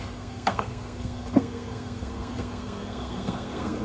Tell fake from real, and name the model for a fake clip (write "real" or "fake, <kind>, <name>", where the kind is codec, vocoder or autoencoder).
fake, codec, SNAC